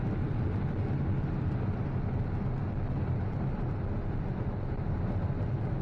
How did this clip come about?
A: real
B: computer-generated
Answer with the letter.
A